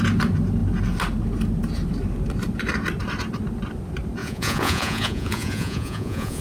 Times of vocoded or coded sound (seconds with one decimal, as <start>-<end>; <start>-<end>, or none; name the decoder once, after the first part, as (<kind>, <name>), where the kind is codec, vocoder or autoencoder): 4.2-6.4 (vocoder, Vocos)